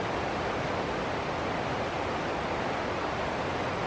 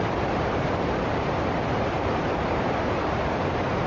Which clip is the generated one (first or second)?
second